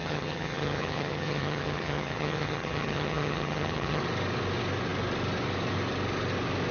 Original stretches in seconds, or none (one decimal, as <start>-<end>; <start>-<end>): 4.0-6.7